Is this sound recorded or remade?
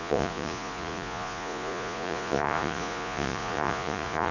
remade